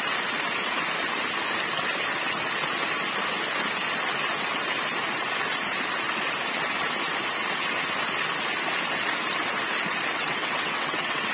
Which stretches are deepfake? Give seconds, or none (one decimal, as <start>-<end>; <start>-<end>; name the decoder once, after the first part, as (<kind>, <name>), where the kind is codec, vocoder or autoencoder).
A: 10.1-11.3 (vocoder, WaveNeXt)